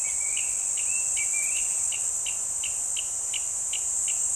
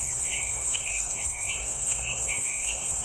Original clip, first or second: first